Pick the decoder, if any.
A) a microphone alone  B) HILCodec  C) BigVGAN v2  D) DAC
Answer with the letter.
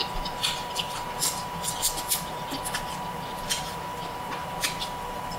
C